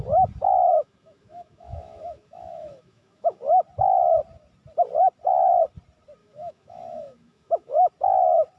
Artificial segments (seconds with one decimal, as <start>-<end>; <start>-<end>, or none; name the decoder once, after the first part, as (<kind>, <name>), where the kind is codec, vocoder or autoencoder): 0.7-3.4 (autoencoder, DAC-VAE); 6.2-7.9